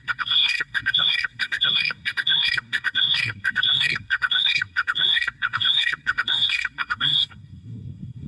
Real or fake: fake